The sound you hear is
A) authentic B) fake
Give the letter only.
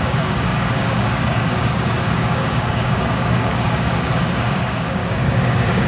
B